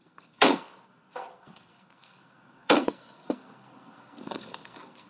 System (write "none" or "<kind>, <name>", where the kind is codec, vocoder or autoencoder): codec, SNAC